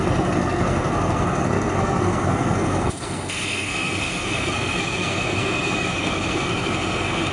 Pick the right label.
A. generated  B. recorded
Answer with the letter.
A